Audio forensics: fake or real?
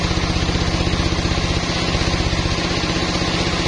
real